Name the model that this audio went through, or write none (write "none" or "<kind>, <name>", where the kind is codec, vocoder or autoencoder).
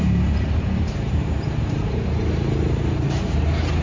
vocoder, BigVGAN v2